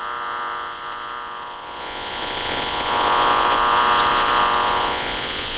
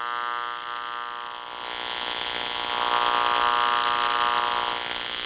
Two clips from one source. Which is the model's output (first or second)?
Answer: first